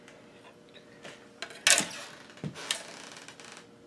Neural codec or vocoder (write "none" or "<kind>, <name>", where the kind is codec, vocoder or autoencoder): none